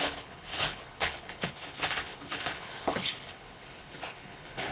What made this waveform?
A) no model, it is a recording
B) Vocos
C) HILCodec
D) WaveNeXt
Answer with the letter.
C